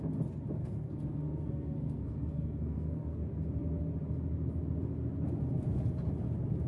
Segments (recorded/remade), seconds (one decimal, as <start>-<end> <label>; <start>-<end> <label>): 0.0-0.6 recorded; 0.6-3.2 remade; 3.2-6.7 recorded